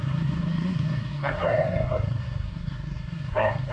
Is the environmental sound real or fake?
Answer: fake